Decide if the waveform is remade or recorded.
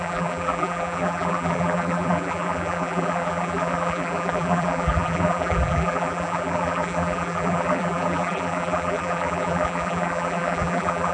remade